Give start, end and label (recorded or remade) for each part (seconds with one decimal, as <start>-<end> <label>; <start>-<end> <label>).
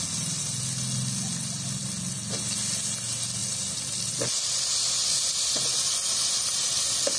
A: 0.0-3.4 recorded; 3.4-4.1 remade; 4.1-7.2 recorded